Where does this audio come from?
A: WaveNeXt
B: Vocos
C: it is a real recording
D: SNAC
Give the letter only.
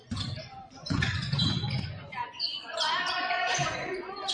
B